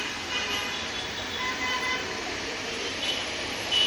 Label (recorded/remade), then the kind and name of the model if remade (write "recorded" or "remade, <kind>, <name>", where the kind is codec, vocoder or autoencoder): remade, vocoder, BigVGAN v2